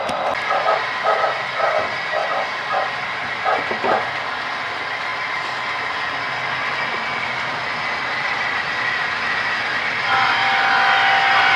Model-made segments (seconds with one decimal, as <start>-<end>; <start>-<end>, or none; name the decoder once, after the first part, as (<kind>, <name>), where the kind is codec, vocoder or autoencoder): 2.2-3.4 (vocoder, BigVGAN v2)

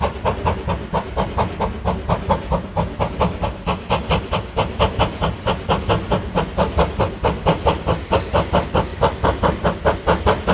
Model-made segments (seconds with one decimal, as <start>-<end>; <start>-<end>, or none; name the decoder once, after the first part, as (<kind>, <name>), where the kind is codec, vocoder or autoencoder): 8.9-9.8 (vocoder, BigVGAN v2)

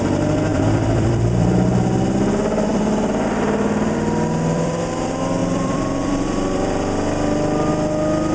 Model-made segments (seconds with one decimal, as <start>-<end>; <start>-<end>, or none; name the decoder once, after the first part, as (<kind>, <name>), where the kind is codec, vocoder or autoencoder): 0.5-1.8 (vocoder, BigVGAN v2); 2.7-4.8; 5.4-7.7

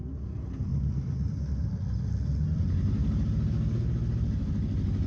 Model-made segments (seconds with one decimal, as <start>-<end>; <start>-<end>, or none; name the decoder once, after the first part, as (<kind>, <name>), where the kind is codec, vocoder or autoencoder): none

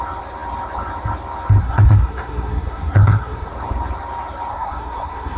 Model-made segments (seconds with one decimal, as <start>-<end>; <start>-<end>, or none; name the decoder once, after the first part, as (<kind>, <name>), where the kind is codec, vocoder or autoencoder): 1.6-3.5 (codec, SNAC); 4.5-5.4

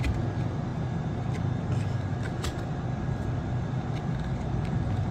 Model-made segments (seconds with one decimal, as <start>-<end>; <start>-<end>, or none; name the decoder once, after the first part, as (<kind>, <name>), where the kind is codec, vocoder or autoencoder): 0.0-5.1 (vocoder, BigVGAN v2)

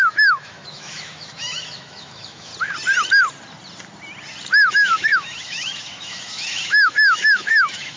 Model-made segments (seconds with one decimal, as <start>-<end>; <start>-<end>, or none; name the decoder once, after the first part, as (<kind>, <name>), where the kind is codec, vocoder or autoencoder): 0.0-2.5 (autoencoder, DAC-VAE); 4.7-8.0